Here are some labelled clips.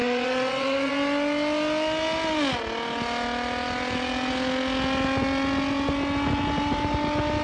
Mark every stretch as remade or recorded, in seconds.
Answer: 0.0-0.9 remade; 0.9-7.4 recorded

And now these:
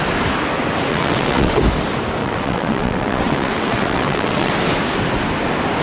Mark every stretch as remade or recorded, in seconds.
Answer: 0.0-0.9 recorded; 0.9-1.6 remade; 1.6-2.2 recorded; 2.2-4.5 remade; 4.5-5.8 recorded

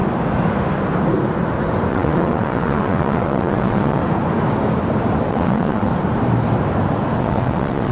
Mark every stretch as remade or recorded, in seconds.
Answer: 0.0-1.9 recorded; 1.9-4.0 remade; 4.0-5.3 recorded; 5.3-5.9 remade; 5.9-7.2 recorded; 7.2-7.9 remade

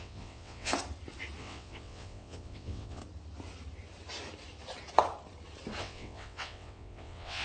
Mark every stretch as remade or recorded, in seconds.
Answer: 0.0-0.7 remade; 0.7-1.4 recorded; 1.4-3.0 remade; 3.0-5.8 recorded; 5.8-7.4 remade

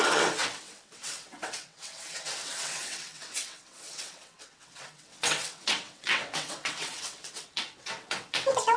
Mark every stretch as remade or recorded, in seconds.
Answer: 0.0-8.8 remade

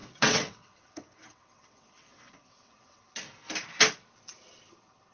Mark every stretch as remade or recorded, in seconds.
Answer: 0.0-3.1 remade; 3.1-5.1 recorded

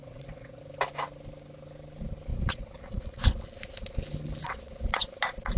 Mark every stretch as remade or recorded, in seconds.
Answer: 0.0-0.6 remade; 0.6-2.3 recorded; 2.3-3.3 remade; 3.3-4.4 recorded; 4.4-5.0 remade; 5.0-5.6 recorded

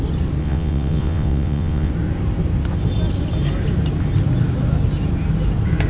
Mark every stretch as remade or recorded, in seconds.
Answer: 0.0-0.4 recorded; 0.4-1.9 remade; 1.9-5.9 recorded